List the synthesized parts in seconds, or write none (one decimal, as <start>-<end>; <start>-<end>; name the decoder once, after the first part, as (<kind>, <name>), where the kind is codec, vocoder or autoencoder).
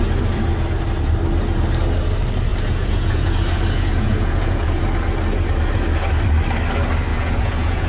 2.5-4.8 (vocoder, Vocos); 7.1-7.9